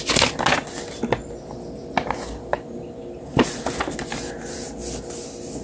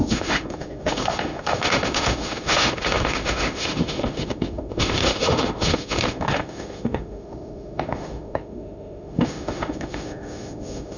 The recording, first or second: first